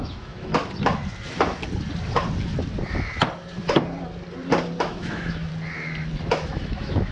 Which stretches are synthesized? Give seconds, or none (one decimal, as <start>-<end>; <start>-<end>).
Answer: 0.0-0.5; 4.8-5.5; 6.3-7.1